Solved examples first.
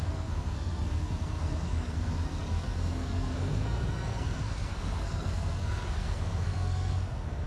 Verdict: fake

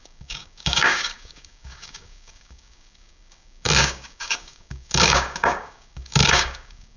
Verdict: fake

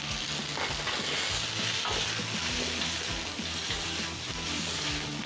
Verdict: real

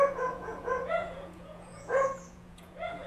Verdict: fake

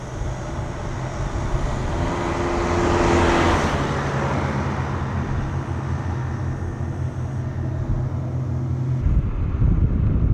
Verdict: real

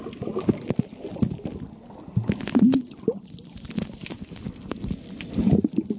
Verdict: real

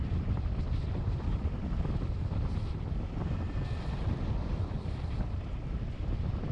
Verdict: fake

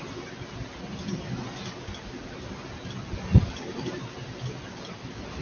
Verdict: real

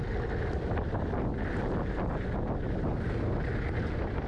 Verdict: real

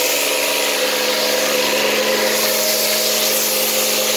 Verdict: real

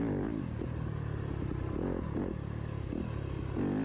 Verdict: real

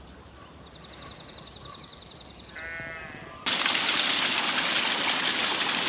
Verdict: real